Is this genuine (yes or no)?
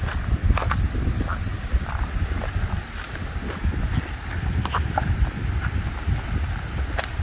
yes